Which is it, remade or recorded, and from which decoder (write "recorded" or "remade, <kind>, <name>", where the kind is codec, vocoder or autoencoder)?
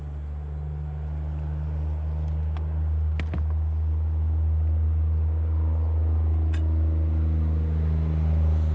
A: recorded